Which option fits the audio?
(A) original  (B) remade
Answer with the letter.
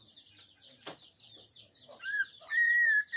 A